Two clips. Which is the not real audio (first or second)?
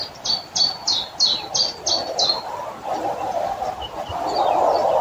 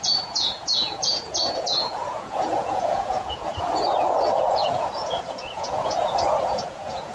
second